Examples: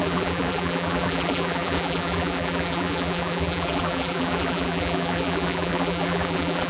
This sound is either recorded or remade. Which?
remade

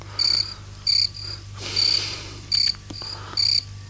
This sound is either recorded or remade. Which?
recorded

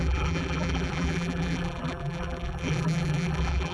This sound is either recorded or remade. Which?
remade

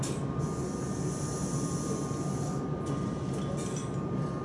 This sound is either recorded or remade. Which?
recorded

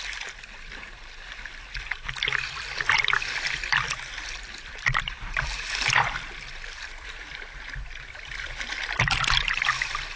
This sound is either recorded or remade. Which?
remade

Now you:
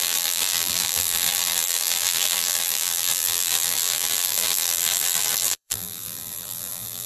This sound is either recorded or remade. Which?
remade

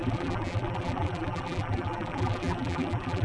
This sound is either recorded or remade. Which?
remade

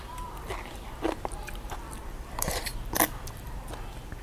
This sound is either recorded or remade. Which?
remade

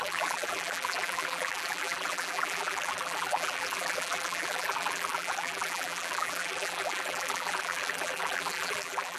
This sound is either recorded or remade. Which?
remade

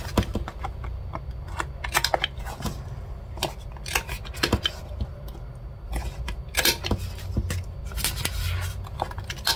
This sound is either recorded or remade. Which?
recorded